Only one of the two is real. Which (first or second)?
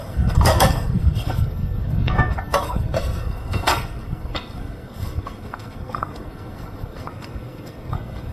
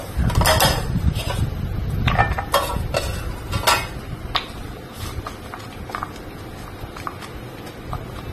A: second